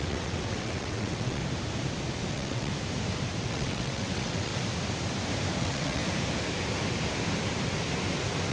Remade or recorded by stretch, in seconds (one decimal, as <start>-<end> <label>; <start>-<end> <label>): 0.0-1.4 remade; 1.4-2.3 recorded; 2.3-2.7 remade; 2.7-3.4 recorded; 3.4-4.5 remade; 4.5-5.6 recorded; 5.6-6.0 remade; 6.0-8.5 recorded